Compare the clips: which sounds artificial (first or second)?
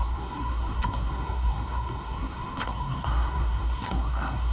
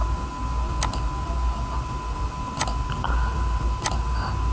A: first